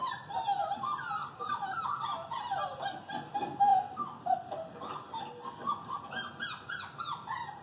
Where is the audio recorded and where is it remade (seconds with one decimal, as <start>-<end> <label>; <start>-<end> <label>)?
0.0-0.7 remade; 0.7-7.6 recorded